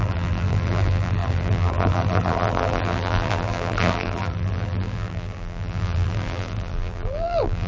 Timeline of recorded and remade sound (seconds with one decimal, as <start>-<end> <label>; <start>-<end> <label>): 0.0-7.7 remade